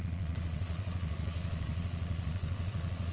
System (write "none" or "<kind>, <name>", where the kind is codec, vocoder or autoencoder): vocoder, Vocos